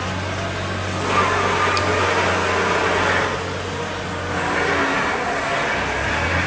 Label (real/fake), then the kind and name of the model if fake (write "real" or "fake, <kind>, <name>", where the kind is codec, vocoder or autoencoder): real